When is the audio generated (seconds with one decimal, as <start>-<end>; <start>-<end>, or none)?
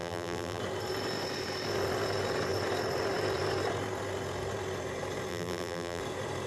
0.0-0.6; 5.3-6.0